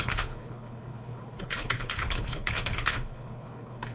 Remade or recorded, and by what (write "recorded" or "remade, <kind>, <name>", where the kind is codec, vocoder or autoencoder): remade, codec, HILCodec